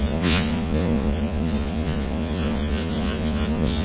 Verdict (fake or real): fake